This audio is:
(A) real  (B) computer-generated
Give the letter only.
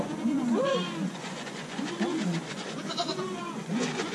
B